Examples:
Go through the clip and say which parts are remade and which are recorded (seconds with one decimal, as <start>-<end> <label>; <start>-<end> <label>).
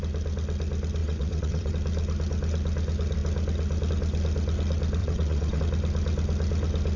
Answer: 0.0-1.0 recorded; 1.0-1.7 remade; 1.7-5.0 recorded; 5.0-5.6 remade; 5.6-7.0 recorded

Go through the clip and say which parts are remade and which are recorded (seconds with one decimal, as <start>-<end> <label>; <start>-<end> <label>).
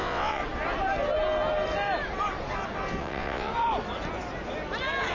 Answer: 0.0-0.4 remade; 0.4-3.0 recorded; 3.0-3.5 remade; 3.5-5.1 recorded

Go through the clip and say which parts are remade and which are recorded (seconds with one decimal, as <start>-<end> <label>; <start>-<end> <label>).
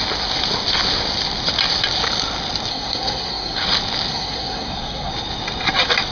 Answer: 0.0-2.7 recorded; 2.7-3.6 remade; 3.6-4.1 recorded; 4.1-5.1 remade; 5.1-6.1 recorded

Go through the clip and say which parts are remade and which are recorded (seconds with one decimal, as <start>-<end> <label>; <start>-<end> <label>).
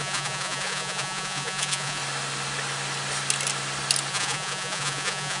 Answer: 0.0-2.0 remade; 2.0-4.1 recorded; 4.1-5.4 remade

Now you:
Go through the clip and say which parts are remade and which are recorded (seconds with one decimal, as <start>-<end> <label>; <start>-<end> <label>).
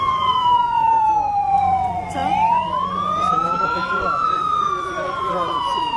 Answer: 0.0-6.0 remade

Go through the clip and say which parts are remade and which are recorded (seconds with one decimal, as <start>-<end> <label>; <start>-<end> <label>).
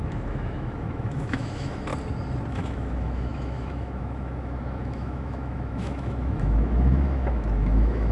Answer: 0.0-1.9 remade; 1.9-2.5 recorded; 2.5-8.1 remade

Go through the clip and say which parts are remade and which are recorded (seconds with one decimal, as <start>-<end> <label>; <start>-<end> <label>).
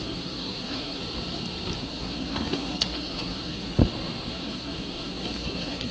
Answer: 0.0-1.0 remade; 1.0-1.8 recorded; 1.8-3.8 remade; 3.8-4.3 recorded; 4.3-5.9 remade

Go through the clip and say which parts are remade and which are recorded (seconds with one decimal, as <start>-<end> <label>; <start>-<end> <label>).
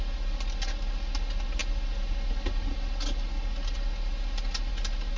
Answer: 0.0-5.2 recorded